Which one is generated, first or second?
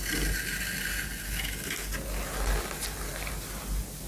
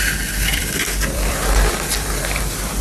second